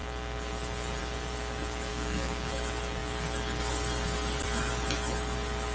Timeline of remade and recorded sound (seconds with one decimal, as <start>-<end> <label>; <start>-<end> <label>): 0.0-1.9 recorded; 1.9-2.5 remade; 2.5-5.7 recorded

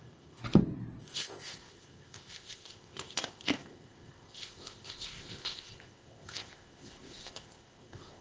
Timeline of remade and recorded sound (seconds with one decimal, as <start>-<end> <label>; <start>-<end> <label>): 0.0-0.4 remade; 0.4-1.0 recorded; 1.0-8.2 remade

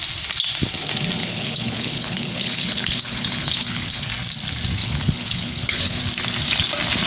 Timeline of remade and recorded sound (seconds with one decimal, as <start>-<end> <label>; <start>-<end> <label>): 0.0-1.2 recorded; 1.2-4.1 remade; 4.1-4.8 recorded; 4.8-6.0 remade; 6.0-7.1 recorded

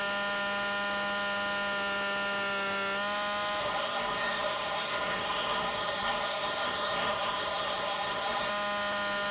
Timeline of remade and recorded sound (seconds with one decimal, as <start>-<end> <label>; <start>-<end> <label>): 0.0-3.6 recorded; 3.6-8.5 remade; 8.5-9.3 recorded

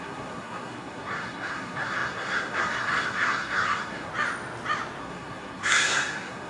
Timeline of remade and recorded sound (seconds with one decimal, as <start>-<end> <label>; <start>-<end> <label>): 0.0-4.1 remade; 4.1-5.0 recorded; 5.0-6.5 remade

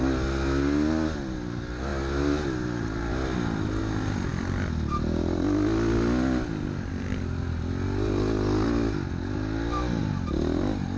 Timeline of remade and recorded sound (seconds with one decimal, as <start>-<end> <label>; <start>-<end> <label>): 0.0-11.0 recorded

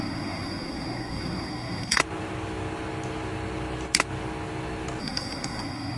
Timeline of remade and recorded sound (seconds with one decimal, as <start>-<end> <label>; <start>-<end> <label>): 0.0-2.0 remade; 2.0-5.0 recorded; 5.0-6.0 remade